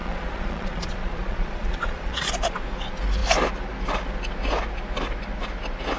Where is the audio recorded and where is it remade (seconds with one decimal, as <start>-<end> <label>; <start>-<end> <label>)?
0.0-2.3 remade; 2.3-6.0 recorded